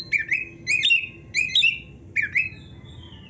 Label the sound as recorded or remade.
recorded